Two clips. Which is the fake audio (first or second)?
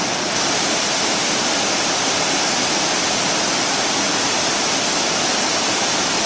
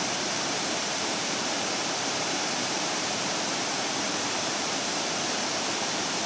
second